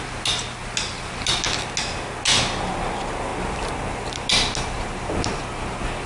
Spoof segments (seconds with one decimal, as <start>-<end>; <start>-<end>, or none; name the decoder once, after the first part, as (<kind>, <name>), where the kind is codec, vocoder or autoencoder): none